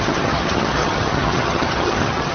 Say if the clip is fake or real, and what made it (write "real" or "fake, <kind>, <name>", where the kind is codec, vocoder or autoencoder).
fake, vocoder, HiFi-GAN